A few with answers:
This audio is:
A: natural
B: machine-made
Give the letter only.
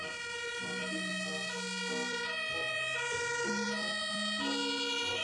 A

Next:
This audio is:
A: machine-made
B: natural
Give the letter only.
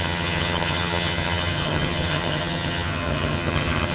A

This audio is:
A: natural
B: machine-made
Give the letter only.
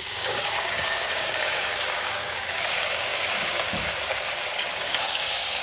B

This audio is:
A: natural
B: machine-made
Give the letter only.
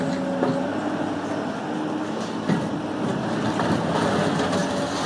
A